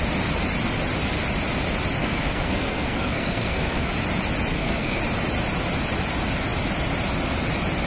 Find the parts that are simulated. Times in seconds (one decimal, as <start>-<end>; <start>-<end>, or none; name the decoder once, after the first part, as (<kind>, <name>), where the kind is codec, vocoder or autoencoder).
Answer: 2.0-3.9 (codec, SNAC); 4.5-5.0